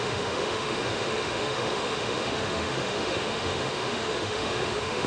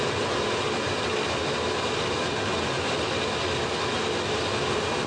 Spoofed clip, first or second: first